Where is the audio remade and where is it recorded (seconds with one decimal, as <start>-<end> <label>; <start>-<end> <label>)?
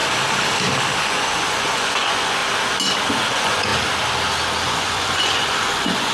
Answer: 0.0-1.0 recorded; 1.0-2.4 remade; 2.4-3.3 recorded; 3.3-3.7 remade; 3.7-4.6 recorded; 4.6-6.1 remade